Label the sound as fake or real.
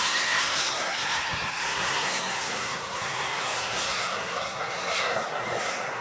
fake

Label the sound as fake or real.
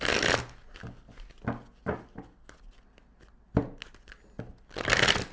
real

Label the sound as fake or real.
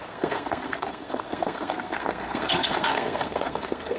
fake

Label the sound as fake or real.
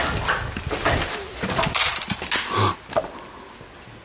real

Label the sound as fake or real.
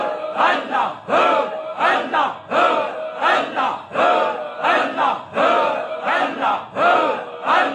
real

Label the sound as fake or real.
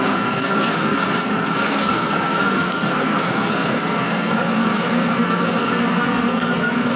fake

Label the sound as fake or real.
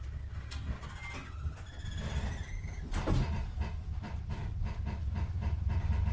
real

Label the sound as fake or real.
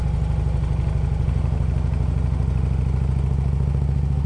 real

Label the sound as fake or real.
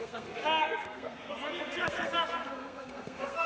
fake